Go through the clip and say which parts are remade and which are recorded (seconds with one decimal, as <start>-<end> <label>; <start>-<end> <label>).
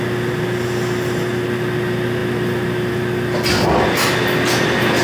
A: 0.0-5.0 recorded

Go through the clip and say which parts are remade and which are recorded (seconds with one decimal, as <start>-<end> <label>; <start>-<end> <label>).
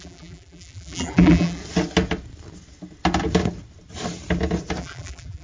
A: 0.0-1.6 remade; 1.6-4.8 recorded; 4.8-5.4 remade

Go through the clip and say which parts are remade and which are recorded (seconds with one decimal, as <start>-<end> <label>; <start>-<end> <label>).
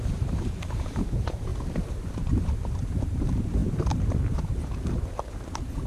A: 0.0-1.5 remade; 1.5-3.0 recorded; 3.0-5.9 remade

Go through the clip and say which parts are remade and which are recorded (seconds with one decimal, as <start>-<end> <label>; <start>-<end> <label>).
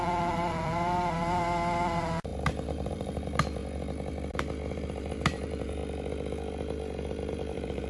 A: 0.0-3.6 remade; 3.6-4.7 recorded; 4.7-5.8 remade; 5.8-7.3 recorded; 7.3-7.9 remade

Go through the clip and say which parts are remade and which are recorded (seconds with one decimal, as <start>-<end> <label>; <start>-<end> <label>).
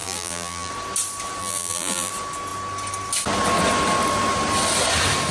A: 0.0-0.7 remade; 0.7-1.4 recorded; 1.4-2.1 remade; 2.1-5.3 recorded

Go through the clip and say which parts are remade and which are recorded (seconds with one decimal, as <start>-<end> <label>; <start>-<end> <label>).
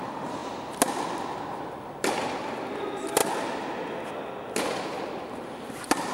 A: 0.0-0.4 remade; 0.4-2.1 recorded; 2.1-3.2 remade; 3.2-4.8 recorded; 4.8-6.1 remade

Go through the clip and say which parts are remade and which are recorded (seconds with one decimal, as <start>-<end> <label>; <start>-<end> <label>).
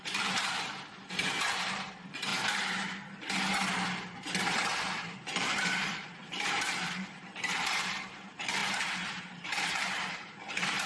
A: 0.0-2.3 remade; 2.3-5.2 recorded; 5.2-10.9 remade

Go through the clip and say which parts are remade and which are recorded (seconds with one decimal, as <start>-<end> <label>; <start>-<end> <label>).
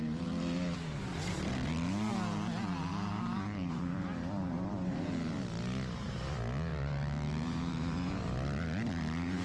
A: 0.0-3.6 recorded; 3.6-5.1 remade; 5.1-6.7 recorded; 6.7-8.1 remade; 8.1-9.4 recorded